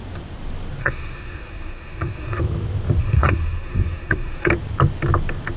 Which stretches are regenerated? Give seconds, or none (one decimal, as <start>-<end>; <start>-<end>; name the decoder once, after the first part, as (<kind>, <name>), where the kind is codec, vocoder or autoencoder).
0.8-2.4 (codec, SNAC); 3.0-4.5